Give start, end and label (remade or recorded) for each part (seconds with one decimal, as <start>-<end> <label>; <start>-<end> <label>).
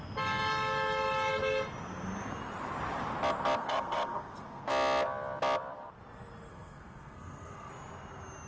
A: 0.0-3.6 recorded; 3.6-4.7 remade; 4.7-6.5 recorded; 6.5-7.7 remade; 7.7-8.5 recorded